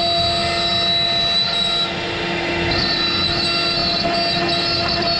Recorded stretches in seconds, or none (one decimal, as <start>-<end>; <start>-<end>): 0.0-5.2